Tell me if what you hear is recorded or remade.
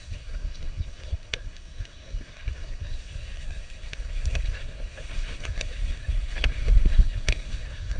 remade